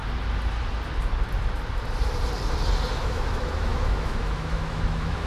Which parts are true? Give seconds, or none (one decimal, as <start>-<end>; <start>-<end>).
0.0-3.0